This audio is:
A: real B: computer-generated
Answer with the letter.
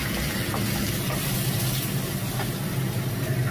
A